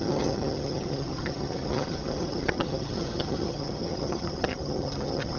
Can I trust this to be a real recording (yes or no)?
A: no